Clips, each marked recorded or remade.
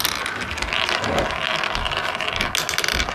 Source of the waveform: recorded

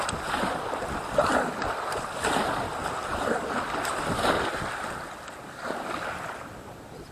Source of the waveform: recorded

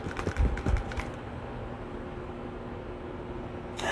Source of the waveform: recorded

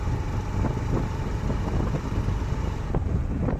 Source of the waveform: recorded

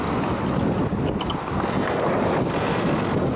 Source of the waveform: recorded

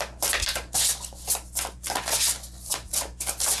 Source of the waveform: recorded